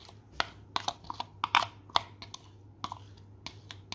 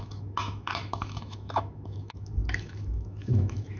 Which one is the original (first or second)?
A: first